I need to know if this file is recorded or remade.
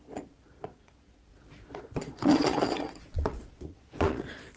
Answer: remade